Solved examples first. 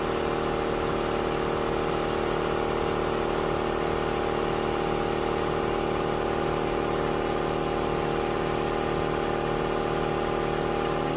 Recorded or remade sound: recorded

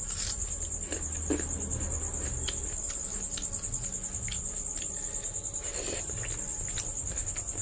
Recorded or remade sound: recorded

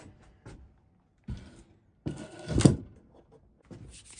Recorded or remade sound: recorded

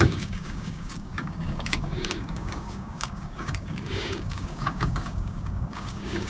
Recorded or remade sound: remade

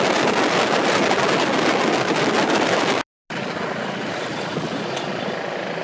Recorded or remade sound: recorded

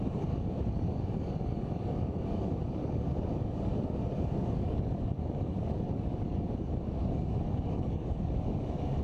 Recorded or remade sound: remade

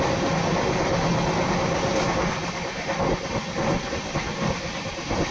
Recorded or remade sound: recorded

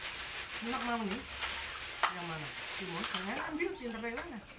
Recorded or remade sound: recorded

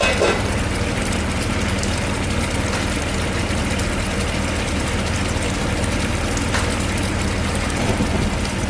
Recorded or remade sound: recorded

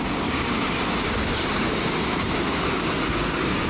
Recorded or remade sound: remade